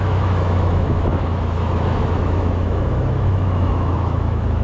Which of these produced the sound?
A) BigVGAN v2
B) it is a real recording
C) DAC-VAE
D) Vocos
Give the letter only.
C